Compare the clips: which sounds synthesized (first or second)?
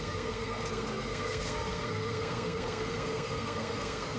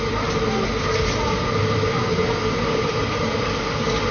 first